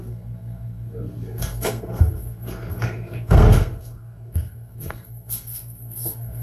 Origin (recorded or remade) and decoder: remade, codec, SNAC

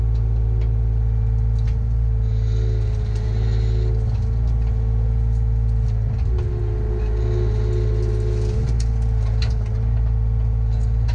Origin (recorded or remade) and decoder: recorded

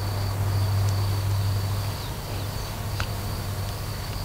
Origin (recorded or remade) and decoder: recorded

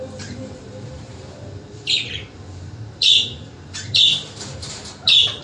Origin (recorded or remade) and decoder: remade, vocoder, BigVGAN v2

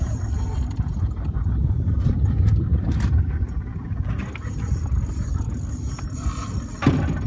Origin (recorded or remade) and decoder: recorded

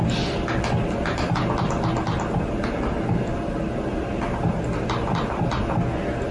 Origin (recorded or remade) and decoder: recorded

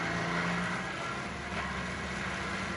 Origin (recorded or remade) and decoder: recorded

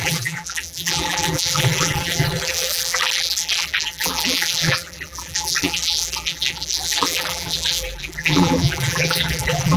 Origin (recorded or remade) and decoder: remade, vocoder, BigVGAN v2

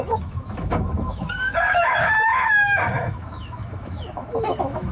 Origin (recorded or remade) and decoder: remade, autoencoder, DAC-VAE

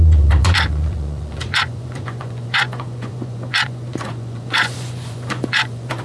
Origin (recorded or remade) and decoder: remade, vocoder, Vocos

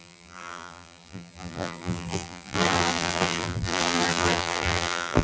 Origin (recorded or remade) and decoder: remade, vocoder, BigVGAN v2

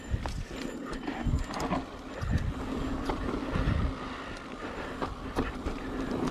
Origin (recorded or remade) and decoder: recorded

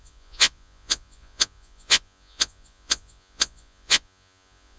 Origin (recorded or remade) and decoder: remade, vocoder, Vocos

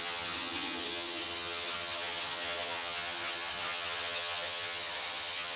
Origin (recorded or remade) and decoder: remade, vocoder, HiFi-GAN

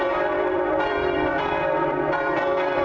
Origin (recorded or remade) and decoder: remade, vocoder, BigVGAN v2